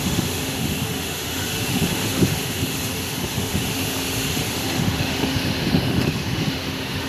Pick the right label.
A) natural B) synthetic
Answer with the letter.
B